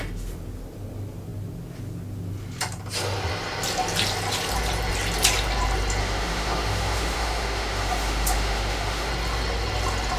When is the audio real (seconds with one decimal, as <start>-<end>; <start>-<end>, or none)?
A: 0.0-6.0; 9.1-10.2